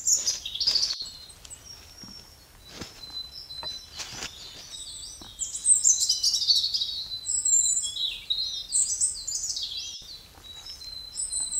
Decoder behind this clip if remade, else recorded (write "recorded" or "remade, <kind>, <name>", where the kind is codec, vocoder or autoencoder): recorded